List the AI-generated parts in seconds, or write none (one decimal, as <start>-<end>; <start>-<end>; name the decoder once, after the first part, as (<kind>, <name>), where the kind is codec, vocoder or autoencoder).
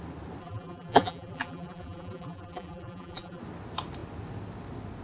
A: 0.4-3.4 (vocoder, BigVGAN v2)